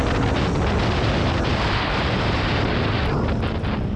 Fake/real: real